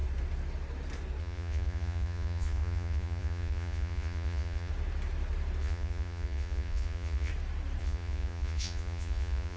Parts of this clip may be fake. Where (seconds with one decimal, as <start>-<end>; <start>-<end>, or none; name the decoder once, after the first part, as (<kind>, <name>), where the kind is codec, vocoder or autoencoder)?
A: 1.2-4.7 (vocoder, Vocos); 5.6-7.3; 7.8-9.6